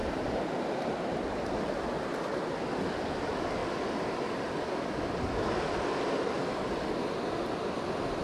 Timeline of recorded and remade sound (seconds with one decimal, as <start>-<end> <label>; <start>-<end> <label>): 0.0-1.2 remade; 1.2-8.2 recorded